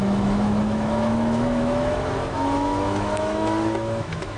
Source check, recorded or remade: remade